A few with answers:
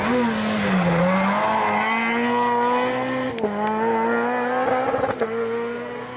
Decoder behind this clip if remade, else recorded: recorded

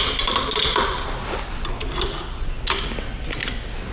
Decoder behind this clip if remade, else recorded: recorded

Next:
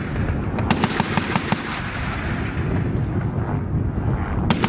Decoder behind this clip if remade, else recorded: recorded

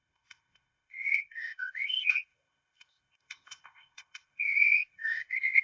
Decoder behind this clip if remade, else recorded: remade, codec, ZipCodec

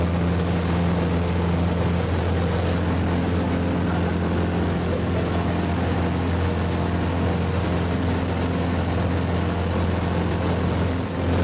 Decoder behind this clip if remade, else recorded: recorded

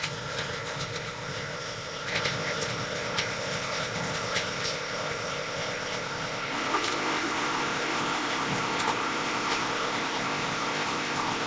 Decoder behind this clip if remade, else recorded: remade, codec, ZipCodec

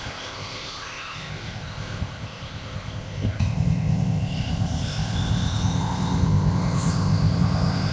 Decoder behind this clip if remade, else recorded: remade, codec, ZipCodec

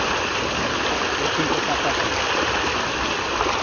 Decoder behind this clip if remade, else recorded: recorded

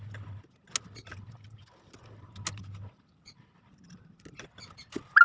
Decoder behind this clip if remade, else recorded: recorded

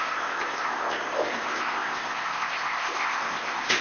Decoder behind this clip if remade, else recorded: remade, codec, ZipCodec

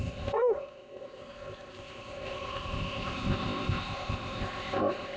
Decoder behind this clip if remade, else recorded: remade, codec, ZipCodec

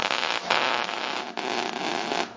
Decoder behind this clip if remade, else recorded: recorded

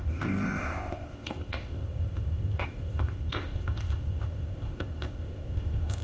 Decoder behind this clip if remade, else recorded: remade, codec, ZipCodec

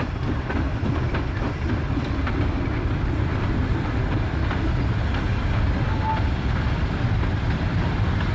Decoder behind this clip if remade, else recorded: recorded